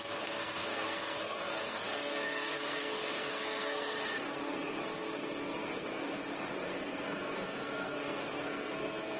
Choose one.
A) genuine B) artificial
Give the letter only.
B